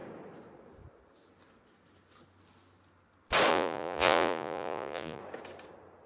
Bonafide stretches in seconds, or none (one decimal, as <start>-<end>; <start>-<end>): 0.0-3.5; 5.2-6.1